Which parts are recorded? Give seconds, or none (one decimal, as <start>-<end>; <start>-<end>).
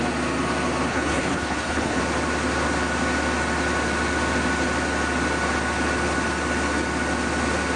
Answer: 0.0-0.9; 2.0-7.8